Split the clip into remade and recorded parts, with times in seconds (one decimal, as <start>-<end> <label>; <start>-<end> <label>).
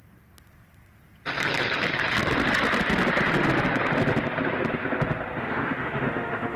0.0-5.4 recorded; 5.4-6.6 remade